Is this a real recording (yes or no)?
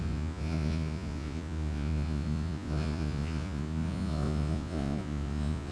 no